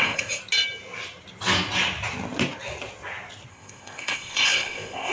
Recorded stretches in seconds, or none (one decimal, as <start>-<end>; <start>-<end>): 0.4-3.5